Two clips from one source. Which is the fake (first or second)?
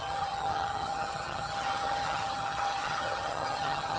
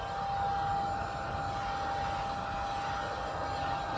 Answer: first